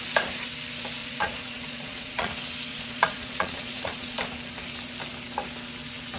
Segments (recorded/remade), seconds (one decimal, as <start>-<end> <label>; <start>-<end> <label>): 0.0-1.0 recorded; 1.0-2.3 remade; 2.3-2.7 recorded; 2.7-4.2 remade; 4.2-6.2 recorded